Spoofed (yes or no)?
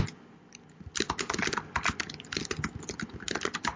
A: no